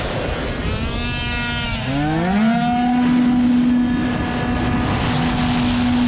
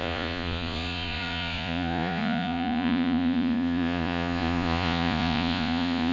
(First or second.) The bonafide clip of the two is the first